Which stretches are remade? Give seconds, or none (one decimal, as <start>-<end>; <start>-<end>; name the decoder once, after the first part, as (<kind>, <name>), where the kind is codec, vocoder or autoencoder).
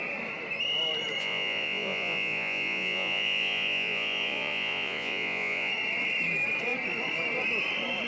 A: 1.2-5.7 (vocoder, Vocos)